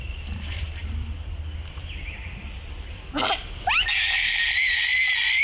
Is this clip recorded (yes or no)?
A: no